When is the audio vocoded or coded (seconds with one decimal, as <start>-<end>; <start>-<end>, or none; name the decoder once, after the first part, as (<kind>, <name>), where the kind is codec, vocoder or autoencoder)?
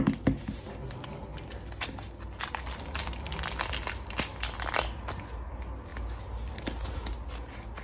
none